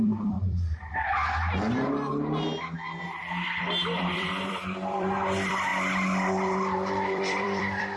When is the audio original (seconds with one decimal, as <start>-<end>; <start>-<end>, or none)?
1.1-3.6; 5.7-6.3